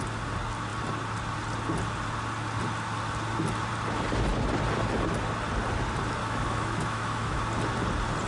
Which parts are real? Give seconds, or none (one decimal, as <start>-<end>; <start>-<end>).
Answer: 0.0-6.2; 7.4-8.3